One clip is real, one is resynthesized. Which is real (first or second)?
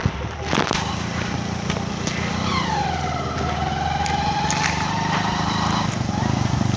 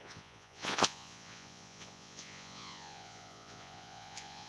first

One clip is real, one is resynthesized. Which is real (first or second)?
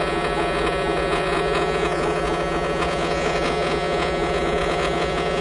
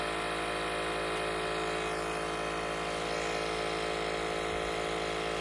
second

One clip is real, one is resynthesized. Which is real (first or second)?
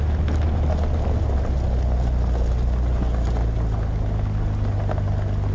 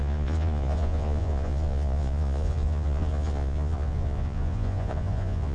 first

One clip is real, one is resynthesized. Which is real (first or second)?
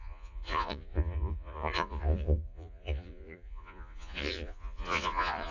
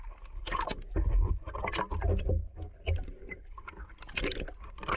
second